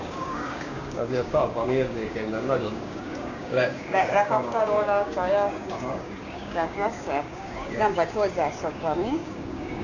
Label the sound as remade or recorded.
remade